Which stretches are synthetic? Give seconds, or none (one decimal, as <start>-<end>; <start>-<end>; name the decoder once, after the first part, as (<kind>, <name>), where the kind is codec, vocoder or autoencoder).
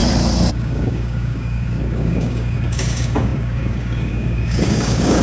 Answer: 0.5-5.2 (codec, DAC)